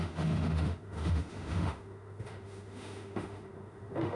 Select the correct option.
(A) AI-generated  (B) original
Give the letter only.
A